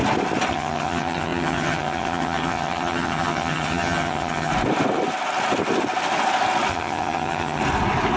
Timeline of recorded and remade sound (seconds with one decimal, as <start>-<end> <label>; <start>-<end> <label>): 0.0-0.5 recorded; 0.5-4.5 remade; 4.5-6.7 recorded; 6.7-7.6 remade; 7.6-8.2 recorded